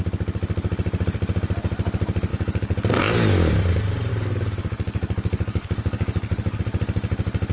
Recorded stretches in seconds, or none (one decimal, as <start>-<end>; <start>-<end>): 0.0-2.3; 3.0-4.1; 6.6-7.5